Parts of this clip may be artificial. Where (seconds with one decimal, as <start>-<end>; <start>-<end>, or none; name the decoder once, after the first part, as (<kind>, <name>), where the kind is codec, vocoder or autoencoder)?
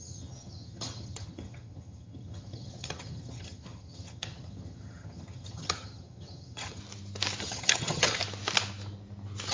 0.0-6.8 (vocoder, HiFi-GAN); 7.4-8.2